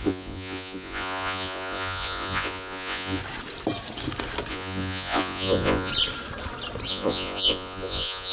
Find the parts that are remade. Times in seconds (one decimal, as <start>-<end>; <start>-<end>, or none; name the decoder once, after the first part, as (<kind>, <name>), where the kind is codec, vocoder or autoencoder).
0.0-3.2 (vocoder, Vocos); 4.5-5.9; 6.9-8.3